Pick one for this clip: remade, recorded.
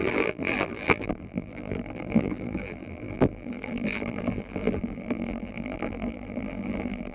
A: remade